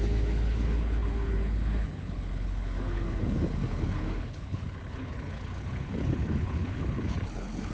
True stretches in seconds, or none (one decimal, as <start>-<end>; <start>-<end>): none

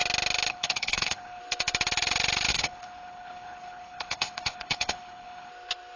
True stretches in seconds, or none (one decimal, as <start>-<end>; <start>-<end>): 0.0-0.5; 1.4-2.5; 5.5-6.0

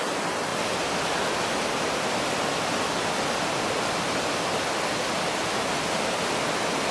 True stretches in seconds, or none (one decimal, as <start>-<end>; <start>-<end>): 0.0-6.9

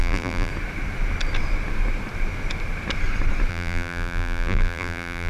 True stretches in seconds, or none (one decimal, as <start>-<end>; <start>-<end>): 0.5-3.5

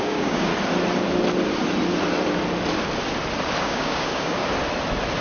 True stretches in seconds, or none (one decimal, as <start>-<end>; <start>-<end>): 0.5-3.6; 4.4-5.2

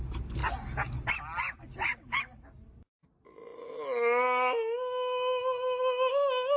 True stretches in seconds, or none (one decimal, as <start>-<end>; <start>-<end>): 0.0-6.6

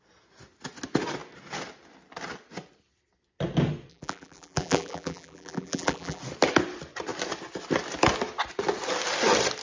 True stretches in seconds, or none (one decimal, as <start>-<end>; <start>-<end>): 0.0-3.9; 6.2-9.6